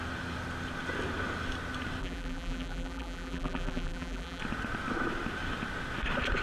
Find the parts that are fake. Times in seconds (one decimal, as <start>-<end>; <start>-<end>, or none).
2.0-4.4